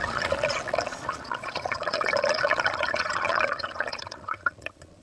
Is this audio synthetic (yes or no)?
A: yes